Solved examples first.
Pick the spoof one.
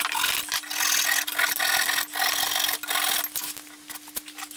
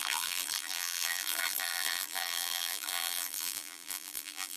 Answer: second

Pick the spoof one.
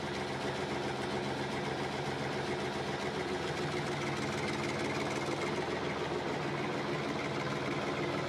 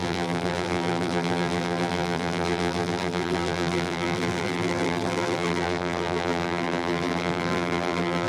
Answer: second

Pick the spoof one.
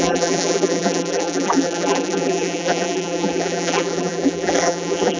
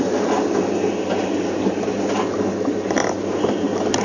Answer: first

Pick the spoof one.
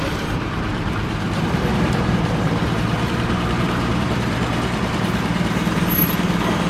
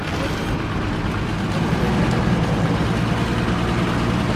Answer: first